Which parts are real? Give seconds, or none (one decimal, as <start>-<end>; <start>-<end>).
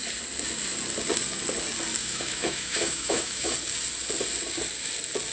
0.0-2.0; 3.5-5.3